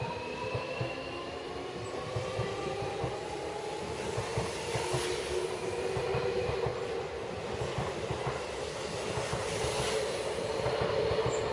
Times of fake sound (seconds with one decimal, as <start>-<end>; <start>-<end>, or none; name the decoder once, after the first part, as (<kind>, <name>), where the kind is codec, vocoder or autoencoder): none